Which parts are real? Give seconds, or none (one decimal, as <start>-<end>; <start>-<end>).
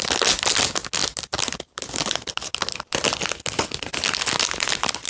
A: 0.0-5.1